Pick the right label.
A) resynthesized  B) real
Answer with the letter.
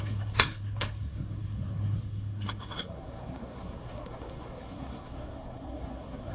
A